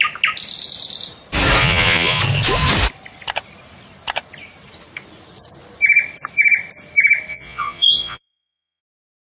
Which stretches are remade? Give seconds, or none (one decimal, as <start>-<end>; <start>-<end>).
1.6-2.2; 7.3-8.8